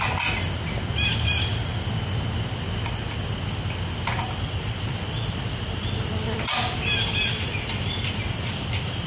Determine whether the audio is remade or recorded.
recorded